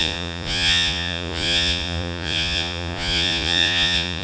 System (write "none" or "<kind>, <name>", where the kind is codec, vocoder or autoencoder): vocoder, Vocos